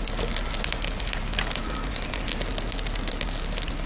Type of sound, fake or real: real